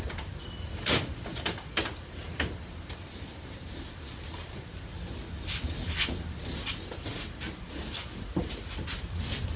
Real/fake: real